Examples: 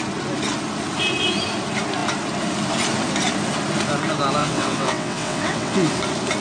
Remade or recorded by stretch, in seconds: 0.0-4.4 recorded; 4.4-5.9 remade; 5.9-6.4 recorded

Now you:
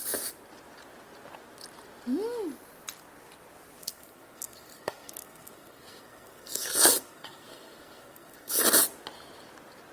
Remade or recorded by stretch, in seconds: 0.0-3.8 recorded; 3.8-8.6 remade; 8.6-9.9 recorded

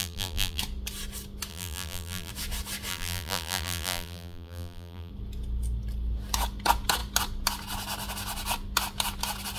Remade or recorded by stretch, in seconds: 0.0-0.6 remade; 0.6-1.5 recorded; 1.5-2.3 remade; 2.3-2.9 recorded; 2.9-5.1 remade; 5.1-9.6 recorded

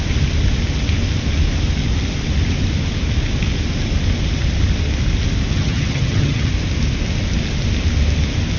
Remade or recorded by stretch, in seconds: 0.0-5.5 recorded; 5.5-6.5 remade; 6.5-8.6 recorded

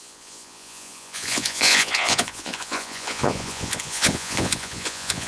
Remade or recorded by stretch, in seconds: 0.0-5.3 remade

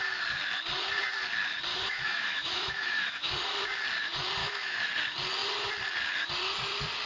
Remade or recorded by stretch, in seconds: 0.0-1.7 recorded; 1.7-3.3 remade; 3.3-4.4 recorded; 4.4-4.9 remade; 4.9-7.1 recorded

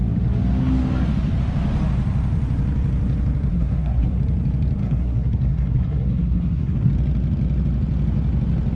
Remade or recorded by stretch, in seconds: 0.0-3.5 recorded; 3.5-4.2 remade; 4.2-4.8 recorded; 4.8-6.9 remade; 6.9-8.8 recorded